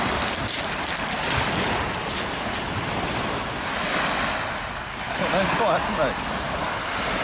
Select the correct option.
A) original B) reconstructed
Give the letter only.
A